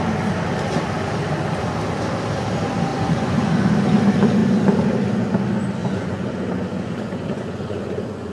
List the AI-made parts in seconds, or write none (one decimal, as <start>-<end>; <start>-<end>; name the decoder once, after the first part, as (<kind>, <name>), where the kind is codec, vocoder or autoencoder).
2.9-3.7 (vocoder, Vocos); 5.8-8.3